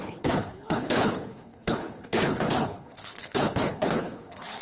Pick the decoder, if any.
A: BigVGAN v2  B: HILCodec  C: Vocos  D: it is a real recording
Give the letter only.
B